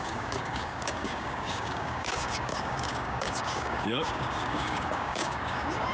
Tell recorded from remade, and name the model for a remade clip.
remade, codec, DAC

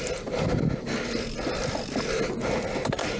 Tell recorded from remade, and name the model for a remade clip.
recorded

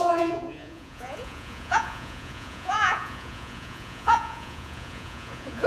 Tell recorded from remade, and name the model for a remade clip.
remade, vocoder, Vocos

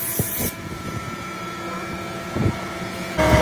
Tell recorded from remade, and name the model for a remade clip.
remade, vocoder, Vocos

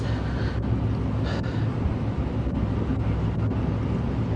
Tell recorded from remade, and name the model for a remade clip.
recorded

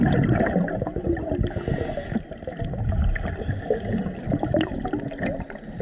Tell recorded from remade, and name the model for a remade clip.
recorded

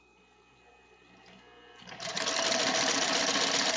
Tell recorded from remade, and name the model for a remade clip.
recorded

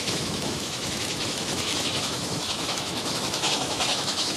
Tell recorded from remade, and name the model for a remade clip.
remade, autoencoder, DAC-VAE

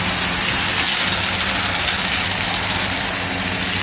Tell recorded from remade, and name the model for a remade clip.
recorded